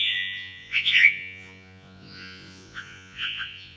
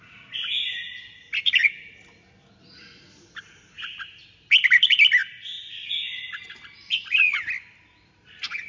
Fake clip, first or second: first